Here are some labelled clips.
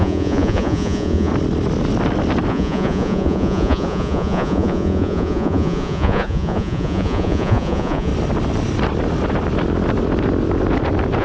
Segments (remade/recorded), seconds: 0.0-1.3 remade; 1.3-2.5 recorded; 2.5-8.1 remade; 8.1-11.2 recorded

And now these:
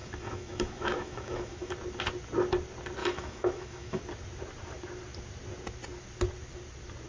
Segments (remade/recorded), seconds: 0.0-1.7 remade; 1.7-3.0 recorded; 3.0-4.0 remade; 4.0-7.1 recorded